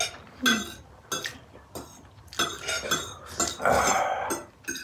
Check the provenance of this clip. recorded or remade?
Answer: recorded